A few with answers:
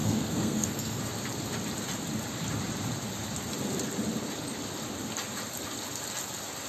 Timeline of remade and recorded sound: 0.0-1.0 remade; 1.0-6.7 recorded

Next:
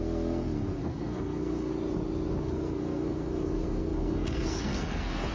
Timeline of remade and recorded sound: 0.0-1.7 remade; 1.7-2.4 recorded; 2.4-5.3 remade

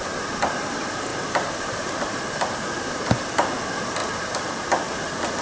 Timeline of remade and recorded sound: 0.0-1.1 recorded; 1.1-3.3 remade; 3.3-5.4 recorded

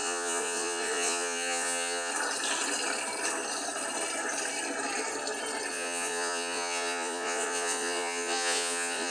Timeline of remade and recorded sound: 0.0-2.1 remade; 2.1-5.7 recorded; 5.7-9.1 remade

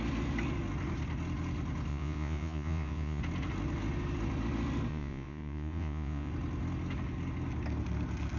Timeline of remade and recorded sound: 0.0-1.9 recorded; 1.9-3.2 remade; 3.2-4.9 recorded; 4.9-6.3 remade; 6.3-8.4 recorded

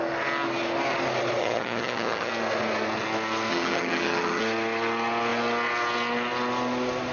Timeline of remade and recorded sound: 0.0-1.4 recorded; 1.4-2.3 remade; 2.3-3.5 recorded; 3.5-4.4 remade; 4.4-7.1 recorded